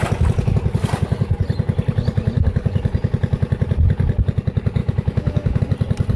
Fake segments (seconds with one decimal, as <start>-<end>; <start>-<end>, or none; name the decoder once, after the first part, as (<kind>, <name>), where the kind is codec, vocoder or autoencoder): 4.8-5.6 (autoencoder, DAC-VAE)